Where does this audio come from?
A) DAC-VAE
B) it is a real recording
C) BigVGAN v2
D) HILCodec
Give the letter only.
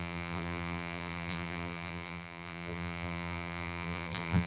C